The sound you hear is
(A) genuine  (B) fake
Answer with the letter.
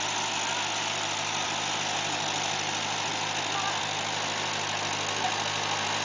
A